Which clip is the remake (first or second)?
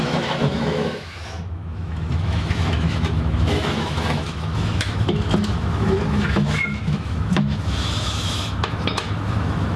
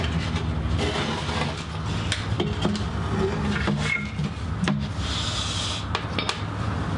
first